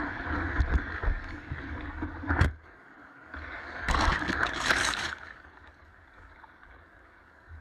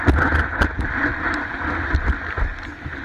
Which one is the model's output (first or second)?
first